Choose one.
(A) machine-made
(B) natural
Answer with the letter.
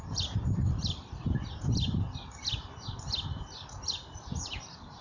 A